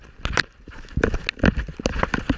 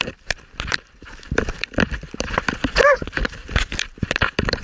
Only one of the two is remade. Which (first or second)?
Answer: second